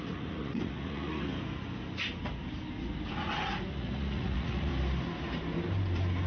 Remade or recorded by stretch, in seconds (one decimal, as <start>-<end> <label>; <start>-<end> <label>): 0.0-1.3 remade; 1.3-3.7 recorded; 3.7-4.7 remade; 4.7-6.3 recorded

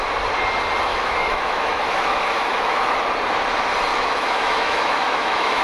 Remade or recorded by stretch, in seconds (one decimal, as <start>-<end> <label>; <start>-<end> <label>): 0.0-0.9 recorded; 0.9-3.0 remade; 3.0-3.9 recorded; 3.9-5.6 remade

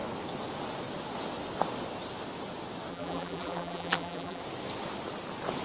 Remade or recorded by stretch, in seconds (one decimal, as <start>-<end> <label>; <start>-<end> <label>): 0.0-2.9 recorded; 2.9-4.4 remade; 4.4-5.6 recorded

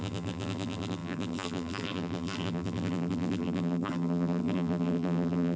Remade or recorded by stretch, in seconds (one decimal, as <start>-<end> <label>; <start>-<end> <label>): 0.0-5.6 remade

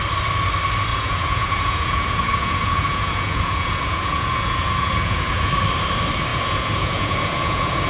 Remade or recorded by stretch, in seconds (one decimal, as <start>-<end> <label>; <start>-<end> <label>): 0.0-0.9 recorded; 0.9-5.5 remade; 5.5-6.3 recorded; 6.3-7.9 remade

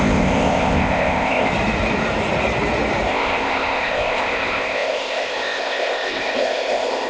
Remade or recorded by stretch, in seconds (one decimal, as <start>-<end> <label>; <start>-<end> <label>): 0.0-1.5 remade; 1.5-3.1 recorded; 3.1-7.1 remade

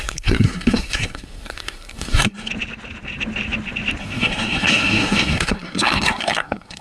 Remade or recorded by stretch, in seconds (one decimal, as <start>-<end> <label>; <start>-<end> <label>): 0.0-2.5 remade; 2.5-4.0 recorded; 4.0-6.8 remade

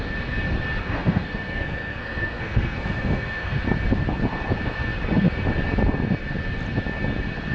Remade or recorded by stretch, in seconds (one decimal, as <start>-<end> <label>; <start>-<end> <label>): 0.0-0.8 recorded; 0.8-3.6 remade; 3.6-7.5 recorded